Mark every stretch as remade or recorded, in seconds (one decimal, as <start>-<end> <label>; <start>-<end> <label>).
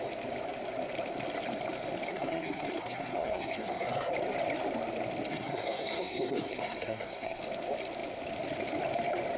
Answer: 0.0-2.1 recorded; 2.1-4.1 remade; 4.1-5.3 recorded; 5.3-7.4 remade; 7.4-9.4 recorded